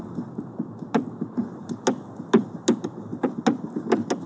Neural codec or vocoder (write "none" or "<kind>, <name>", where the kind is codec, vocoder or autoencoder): none